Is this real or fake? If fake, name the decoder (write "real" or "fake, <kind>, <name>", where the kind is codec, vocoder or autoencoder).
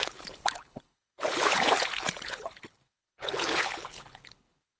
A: fake, codec, HILCodec